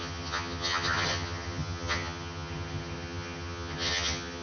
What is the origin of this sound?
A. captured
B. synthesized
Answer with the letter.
B